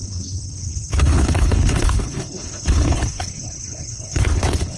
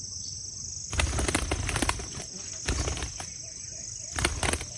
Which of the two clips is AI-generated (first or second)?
first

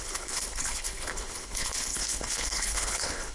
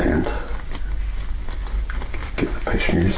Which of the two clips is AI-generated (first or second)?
first